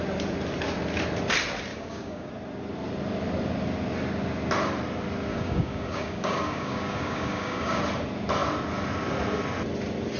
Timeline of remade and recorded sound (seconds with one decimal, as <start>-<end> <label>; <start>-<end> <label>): 0.0-1.7 recorded; 1.7-2.3 remade; 2.3-5.3 recorded; 5.3-7.8 remade; 7.8-10.2 recorded

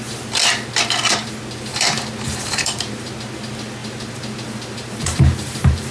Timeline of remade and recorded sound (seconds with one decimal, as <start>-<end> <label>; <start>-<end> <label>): 0.0-1.7 recorded; 1.7-3.1 remade; 3.1-3.8 recorded; 3.8-5.9 remade

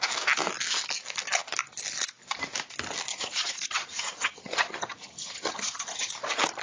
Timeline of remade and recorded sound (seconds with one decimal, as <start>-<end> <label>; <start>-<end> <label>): 0.0-3.1 recorded; 3.1-6.1 remade; 6.1-6.6 recorded

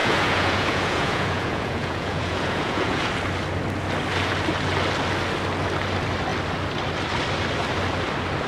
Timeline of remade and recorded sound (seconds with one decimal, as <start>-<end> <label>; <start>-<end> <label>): 0.0-3.1 remade; 3.1-8.5 recorded

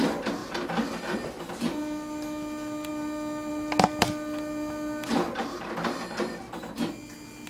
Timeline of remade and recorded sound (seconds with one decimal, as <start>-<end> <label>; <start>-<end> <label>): 0.0-7.5 recorded